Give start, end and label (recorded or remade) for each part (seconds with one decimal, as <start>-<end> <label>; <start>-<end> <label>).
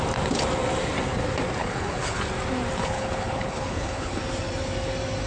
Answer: 0.0-1.6 recorded; 1.6-2.2 remade; 2.2-2.8 recorded; 2.8-4.2 remade; 4.2-5.3 recorded